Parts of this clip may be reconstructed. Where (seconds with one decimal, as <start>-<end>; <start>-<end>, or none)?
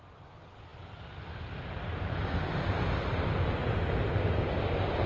none